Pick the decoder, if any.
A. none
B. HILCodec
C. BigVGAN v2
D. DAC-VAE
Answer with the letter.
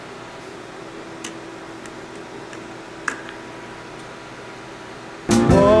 A